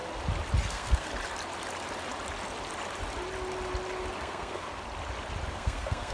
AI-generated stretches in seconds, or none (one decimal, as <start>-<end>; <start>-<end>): 0.7-1.1; 4.2-4.7; 5.5-6.1